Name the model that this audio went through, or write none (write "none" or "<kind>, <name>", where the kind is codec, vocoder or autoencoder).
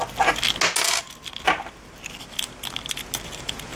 none